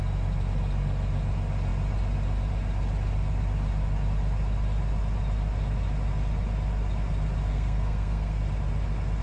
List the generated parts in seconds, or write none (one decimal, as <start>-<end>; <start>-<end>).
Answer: 7.5-8.4